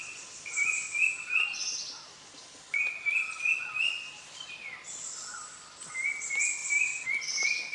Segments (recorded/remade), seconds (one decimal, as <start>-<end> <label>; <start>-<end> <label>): 0.0-6.6 recorded; 6.6-7.1 remade; 7.1-7.7 recorded